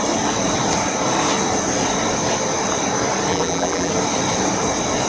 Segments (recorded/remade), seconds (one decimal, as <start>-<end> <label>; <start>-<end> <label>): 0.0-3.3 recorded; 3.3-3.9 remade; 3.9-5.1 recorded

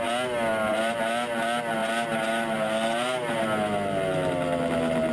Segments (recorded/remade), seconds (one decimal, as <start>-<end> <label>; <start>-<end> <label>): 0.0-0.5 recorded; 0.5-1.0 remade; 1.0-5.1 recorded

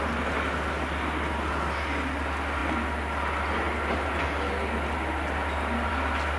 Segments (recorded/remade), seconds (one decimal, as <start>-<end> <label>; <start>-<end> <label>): 0.0-6.4 recorded

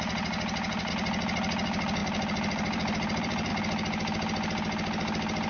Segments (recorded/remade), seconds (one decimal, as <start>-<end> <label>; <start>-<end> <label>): 0.0-2.0 recorded; 2.0-3.5 remade; 3.5-5.5 recorded

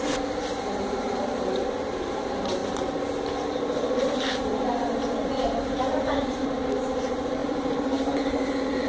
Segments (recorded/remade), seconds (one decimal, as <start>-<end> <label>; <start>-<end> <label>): 0.0-2.6 remade; 2.6-3.3 recorded; 3.3-8.9 remade